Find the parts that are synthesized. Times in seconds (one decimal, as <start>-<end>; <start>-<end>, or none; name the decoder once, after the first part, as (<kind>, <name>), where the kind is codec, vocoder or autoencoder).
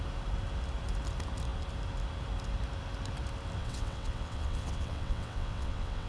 3.6-6.1 (vocoder, WaveNeXt)